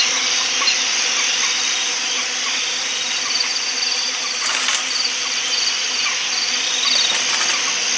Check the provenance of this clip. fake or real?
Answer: real